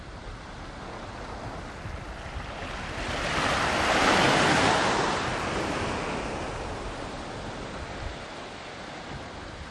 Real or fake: real